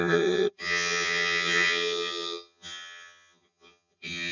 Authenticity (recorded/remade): remade